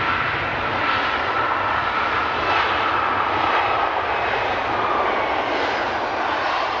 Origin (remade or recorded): recorded